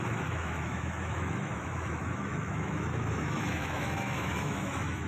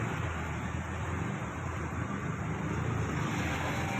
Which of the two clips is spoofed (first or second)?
first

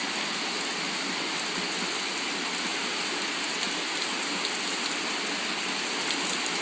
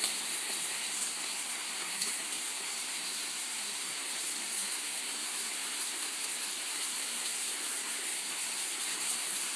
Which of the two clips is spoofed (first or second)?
second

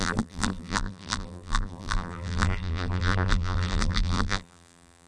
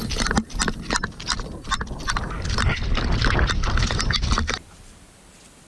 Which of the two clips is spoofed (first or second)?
first